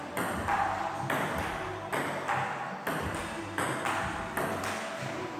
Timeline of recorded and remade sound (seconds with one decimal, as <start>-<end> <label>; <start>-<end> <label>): 0.0-5.4 recorded

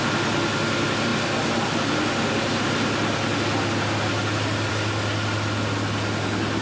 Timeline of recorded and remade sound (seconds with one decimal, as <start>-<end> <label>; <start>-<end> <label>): 0.0-6.6 recorded

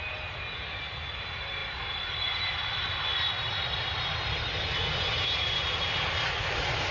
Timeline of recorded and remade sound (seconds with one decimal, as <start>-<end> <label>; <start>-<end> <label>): 0.0-6.9 recorded

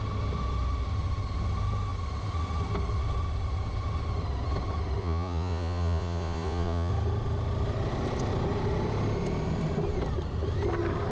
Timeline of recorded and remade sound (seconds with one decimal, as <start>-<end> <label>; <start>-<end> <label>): 0.0-5.0 recorded; 5.0-6.9 remade; 6.9-11.1 recorded